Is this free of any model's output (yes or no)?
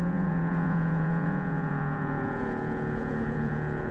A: no